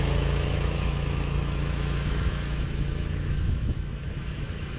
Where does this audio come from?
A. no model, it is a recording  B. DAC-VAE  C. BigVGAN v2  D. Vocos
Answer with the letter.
B